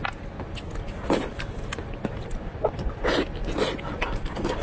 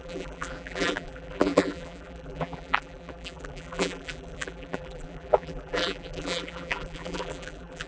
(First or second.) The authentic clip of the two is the first